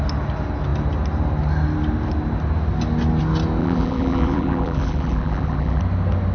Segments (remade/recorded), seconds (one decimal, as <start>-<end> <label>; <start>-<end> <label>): 0.0-3.6 recorded; 3.6-5.8 remade; 5.8-6.3 recorded